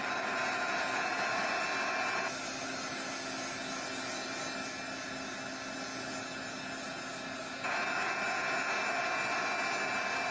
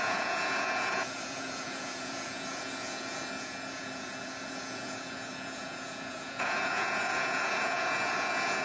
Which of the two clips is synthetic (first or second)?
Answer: second